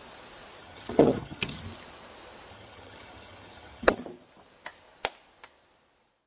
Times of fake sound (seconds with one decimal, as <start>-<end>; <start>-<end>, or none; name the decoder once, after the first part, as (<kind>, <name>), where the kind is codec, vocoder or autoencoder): 0.6-1.6 (vocoder, HiFi-GAN); 2.5-4.0